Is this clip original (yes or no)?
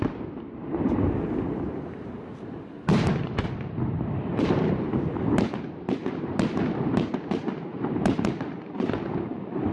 yes